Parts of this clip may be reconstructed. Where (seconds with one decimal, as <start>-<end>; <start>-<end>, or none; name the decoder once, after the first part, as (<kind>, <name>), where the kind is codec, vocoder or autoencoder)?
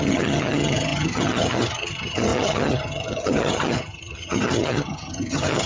0.0-5.7 (vocoder, HiFi-GAN)